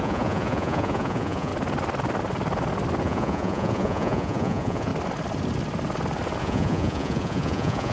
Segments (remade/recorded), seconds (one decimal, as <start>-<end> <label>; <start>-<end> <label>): 0.0-1.5 remade; 1.5-3.0 recorded; 3.0-4.9 remade; 4.9-6.4 recorded; 6.4-7.9 remade